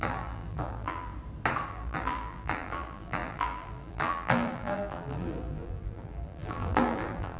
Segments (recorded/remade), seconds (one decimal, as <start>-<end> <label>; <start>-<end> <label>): 0.0-1.1 remade; 1.1-1.7 recorded; 1.7-7.4 remade